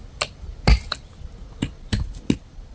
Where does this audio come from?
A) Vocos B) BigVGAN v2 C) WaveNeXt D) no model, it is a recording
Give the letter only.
D